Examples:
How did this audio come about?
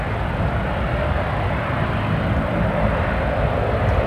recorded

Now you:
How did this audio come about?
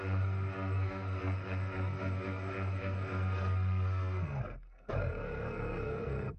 remade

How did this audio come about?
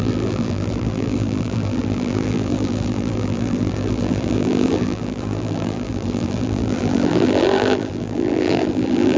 remade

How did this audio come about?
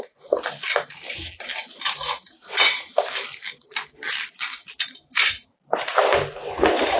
recorded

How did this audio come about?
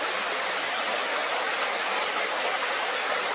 recorded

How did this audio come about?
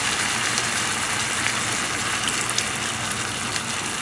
recorded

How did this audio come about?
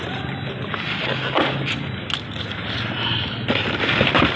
recorded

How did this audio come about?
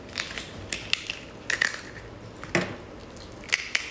recorded